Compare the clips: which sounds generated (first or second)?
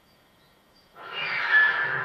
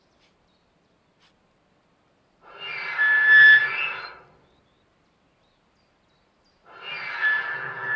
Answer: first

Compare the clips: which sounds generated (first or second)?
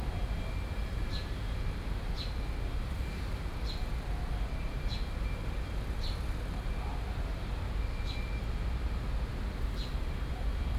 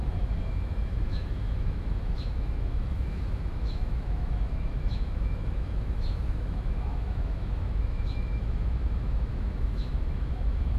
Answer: second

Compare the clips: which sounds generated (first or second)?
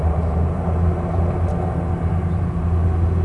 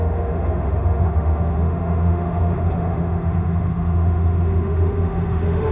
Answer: second